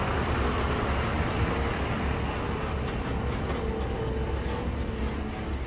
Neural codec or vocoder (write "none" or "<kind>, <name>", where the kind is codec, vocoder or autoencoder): none